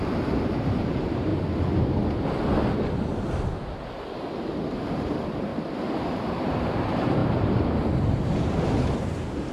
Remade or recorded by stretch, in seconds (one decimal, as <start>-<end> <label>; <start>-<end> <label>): 0.0-1.3 remade; 1.3-4.7 recorded; 4.7-5.5 remade; 5.5-6.1 recorded; 6.1-9.5 remade